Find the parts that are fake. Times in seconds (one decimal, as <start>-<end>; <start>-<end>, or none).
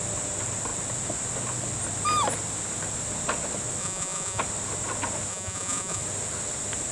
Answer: 3.8-4.4; 5.3-6.0